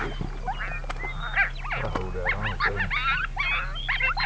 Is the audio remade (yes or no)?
no